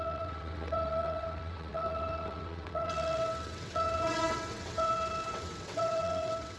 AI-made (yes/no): yes